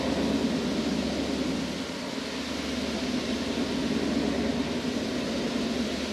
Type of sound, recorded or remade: recorded